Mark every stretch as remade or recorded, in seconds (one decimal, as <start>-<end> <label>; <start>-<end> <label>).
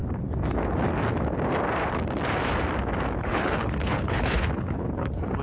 0.0-3.2 recorded; 3.2-5.4 remade